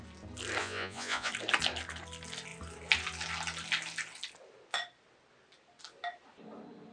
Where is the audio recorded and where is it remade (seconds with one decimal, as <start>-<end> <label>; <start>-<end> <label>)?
0.0-0.6 recorded; 0.6-1.3 remade; 1.3-6.9 recorded